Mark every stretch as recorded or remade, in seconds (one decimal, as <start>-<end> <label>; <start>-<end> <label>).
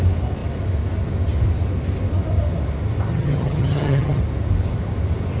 0.0-3.1 recorded; 3.1-4.2 remade; 4.2-5.4 recorded